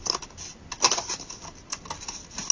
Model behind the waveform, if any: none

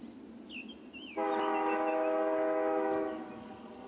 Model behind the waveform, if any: none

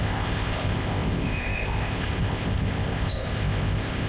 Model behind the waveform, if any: codec, ZipCodec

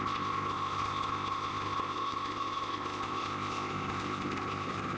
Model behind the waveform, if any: codec, ZipCodec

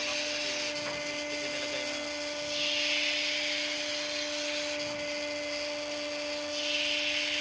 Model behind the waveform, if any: none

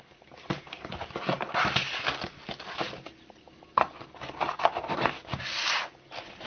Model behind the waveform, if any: none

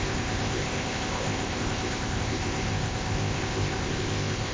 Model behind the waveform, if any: codec, ZipCodec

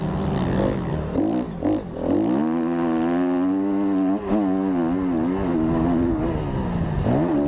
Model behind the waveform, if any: none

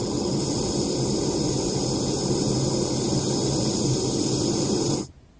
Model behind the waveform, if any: none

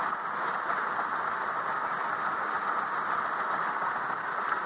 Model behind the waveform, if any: none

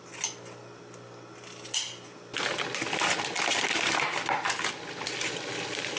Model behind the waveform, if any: none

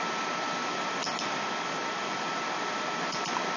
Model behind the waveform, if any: none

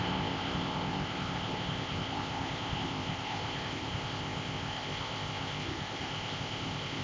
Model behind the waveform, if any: codec, ZipCodec